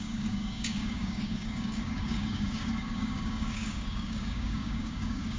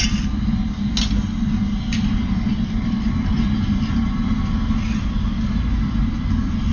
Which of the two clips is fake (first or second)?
first